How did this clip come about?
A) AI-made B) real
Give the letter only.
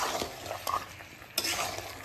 B